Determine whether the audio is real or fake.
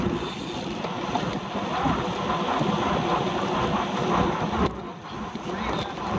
real